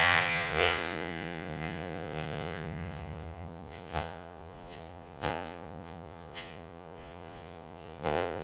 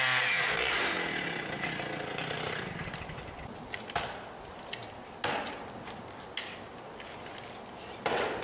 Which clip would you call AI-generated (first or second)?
first